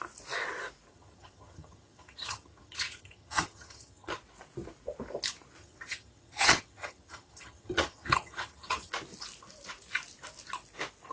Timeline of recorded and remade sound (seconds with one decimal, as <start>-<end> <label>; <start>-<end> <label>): 0.0-0.9 recorded; 0.9-4.2 remade; 4.2-5.6 recorded; 5.6-8.9 remade; 8.9-11.1 recorded